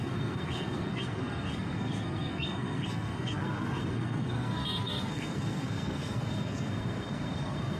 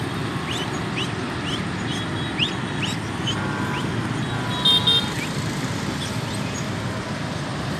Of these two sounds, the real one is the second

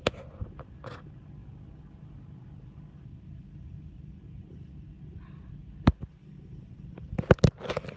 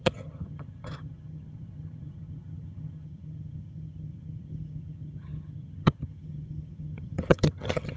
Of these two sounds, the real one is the first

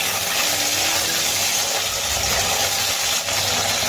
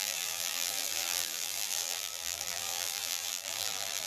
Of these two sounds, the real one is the first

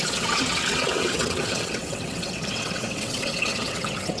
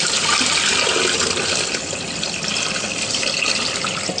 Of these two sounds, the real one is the second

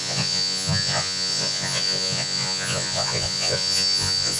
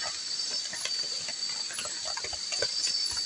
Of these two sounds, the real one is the second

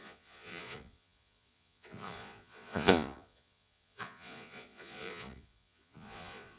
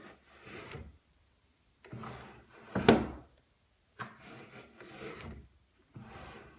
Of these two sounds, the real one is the second